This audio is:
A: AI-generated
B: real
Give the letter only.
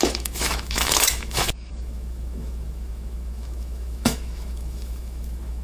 A